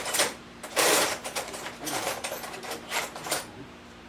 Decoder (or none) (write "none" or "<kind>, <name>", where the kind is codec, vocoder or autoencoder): vocoder, BigVGAN v2